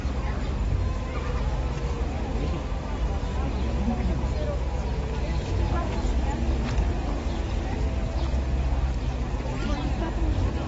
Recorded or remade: recorded